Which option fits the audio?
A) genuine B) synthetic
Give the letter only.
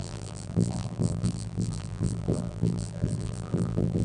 B